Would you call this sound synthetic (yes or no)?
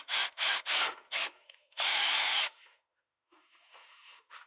yes